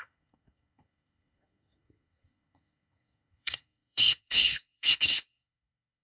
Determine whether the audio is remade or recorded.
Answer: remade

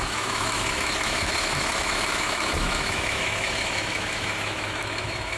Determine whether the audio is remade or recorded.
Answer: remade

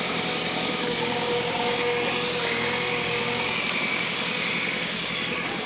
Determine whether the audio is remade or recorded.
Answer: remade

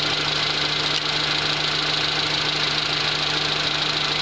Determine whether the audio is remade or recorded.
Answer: recorded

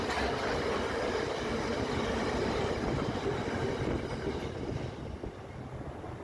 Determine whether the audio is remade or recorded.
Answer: recorded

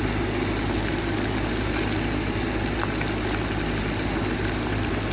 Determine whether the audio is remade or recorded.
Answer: recorded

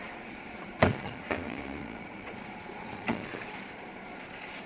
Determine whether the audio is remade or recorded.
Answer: remade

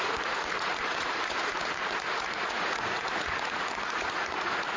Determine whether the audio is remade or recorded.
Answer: remade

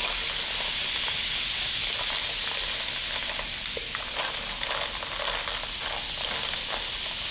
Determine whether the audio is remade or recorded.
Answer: recorded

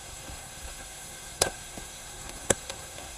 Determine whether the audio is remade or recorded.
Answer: remade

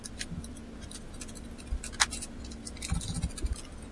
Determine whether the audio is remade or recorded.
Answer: recorded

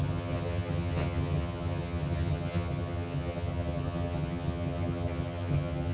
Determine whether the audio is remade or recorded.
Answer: remade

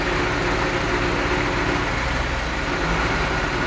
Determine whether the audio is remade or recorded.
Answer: recorded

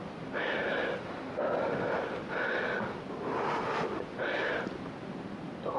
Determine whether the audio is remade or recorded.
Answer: recorded